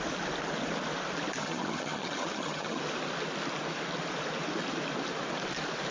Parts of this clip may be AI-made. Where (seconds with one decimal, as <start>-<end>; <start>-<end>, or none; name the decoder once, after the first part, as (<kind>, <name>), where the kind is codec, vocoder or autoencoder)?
1.4-2.8 (vocoder, HiFi-GAN)